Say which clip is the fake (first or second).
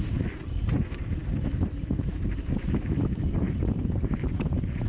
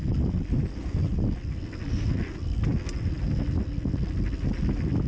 first